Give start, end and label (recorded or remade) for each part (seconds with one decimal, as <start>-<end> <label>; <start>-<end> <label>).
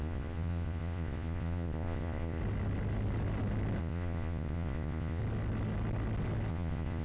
0.0-2.4 remade; 2.4-3.8 recorded; 3.8-5.2 remade; 5.2-6.5 recorded; 6.5-7.0 remade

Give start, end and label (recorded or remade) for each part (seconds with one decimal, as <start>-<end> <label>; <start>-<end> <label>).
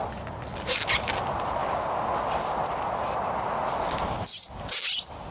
0.0-5.3 recorded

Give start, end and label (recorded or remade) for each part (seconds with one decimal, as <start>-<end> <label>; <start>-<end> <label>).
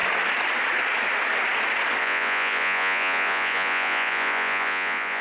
0.0-2.0 recorded; 2.0-5.2 remade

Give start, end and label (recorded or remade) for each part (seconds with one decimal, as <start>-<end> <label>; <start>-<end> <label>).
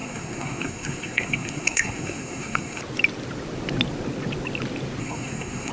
0.0-2.8 remade; 2.8-5.0 recorded; 5.0-5.7 remade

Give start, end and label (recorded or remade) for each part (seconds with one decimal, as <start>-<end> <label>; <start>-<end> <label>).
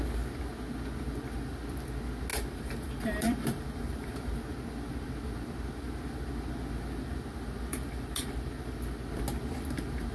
0.0-2.3 recorded; 2.3-4.3 remade; 4.3-7.7 recorded; 7.7-8.3 remade; 8.3-10.1 recorded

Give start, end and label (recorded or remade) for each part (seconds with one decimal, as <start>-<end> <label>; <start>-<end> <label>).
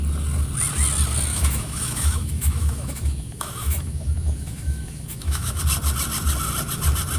0.0-1.3 recorded; 1.3-5.6 remade; 5.6-7.2 recorded